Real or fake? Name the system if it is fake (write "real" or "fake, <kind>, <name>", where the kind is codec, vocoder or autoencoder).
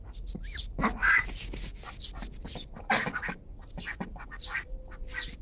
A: real